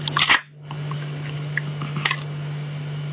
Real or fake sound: real